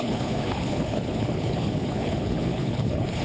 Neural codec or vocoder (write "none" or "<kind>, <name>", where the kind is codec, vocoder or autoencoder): codec, HILCodec